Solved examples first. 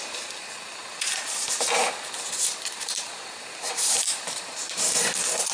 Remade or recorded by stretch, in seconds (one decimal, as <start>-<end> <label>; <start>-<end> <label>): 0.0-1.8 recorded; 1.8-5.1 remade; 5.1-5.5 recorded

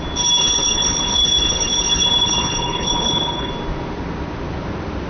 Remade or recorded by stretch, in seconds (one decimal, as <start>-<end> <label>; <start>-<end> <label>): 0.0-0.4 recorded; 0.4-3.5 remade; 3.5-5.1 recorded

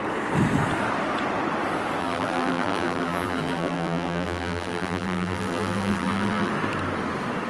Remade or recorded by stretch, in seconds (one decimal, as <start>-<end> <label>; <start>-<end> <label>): 0.0-2.0 recorded; 2.0-6.5 remade; 6.5-7.5 recorded

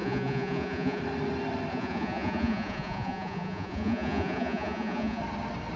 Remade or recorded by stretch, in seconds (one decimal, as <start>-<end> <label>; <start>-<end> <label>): 0.0-1.0 remade; 1.0-1.7 recorded; 1.7-5.2 remade; 5.2-5.8 recorded

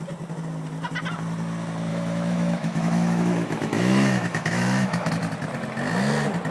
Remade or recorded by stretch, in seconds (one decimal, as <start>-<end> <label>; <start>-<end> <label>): 0.0-1.9 recorded; 1.9-5.1 remade; 5.1-6.5 recorded

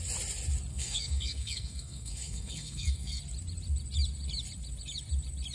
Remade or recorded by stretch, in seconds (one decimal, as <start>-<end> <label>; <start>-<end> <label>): 0.0-0.7 recorded; 0.7-3.2 remade; 3.2-5.5 recorded

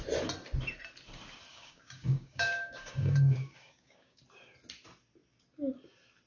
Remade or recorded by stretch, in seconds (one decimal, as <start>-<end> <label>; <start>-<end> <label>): 0.0-1.5 recorded; 1.5-4.2 remade; 4.2-6.3 recorded